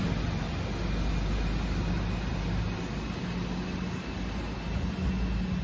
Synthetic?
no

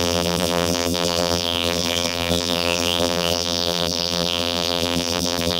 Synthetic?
yes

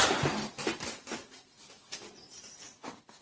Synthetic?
no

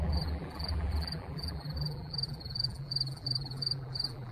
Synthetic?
yes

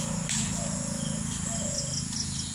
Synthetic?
no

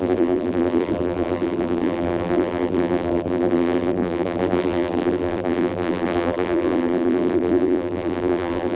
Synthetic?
yes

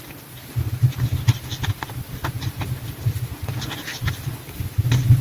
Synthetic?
yes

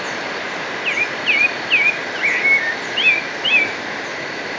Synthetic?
no